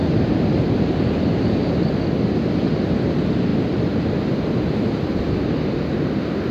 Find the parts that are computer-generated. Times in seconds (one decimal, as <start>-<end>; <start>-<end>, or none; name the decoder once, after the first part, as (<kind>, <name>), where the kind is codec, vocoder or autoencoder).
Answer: 0.0-2.0 (vocoder, BigVGAN v2)